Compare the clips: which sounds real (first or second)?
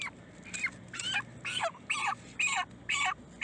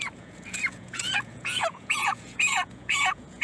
first